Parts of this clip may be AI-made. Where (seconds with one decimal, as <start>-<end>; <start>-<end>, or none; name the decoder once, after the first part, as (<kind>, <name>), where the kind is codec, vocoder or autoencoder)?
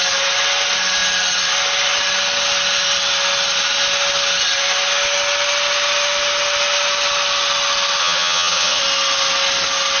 8.0-8.8 (vocoder, HiFi-GAN)